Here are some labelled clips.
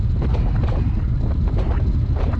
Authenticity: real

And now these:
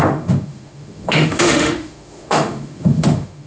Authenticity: fake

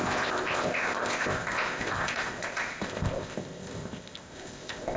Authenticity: fake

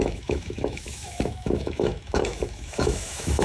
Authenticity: fake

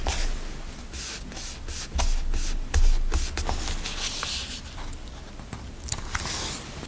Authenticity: real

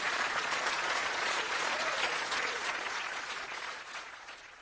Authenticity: fake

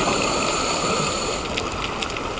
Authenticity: real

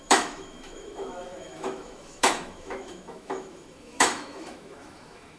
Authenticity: fake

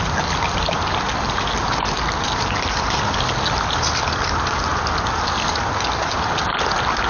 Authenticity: real